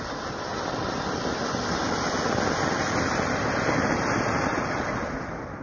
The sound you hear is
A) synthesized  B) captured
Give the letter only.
B